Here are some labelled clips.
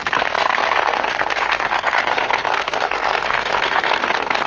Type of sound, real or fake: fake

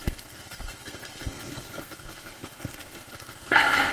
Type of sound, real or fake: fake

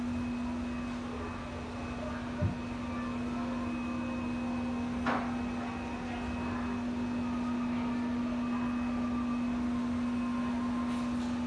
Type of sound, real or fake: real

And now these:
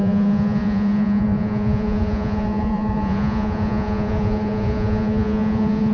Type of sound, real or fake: fake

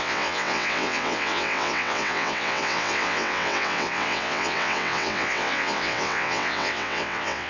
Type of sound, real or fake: fake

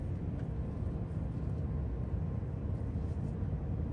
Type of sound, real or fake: real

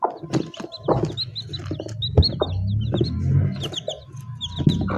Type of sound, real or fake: real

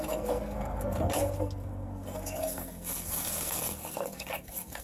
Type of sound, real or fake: fake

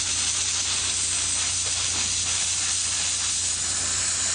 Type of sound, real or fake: real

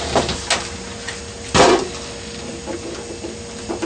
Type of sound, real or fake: real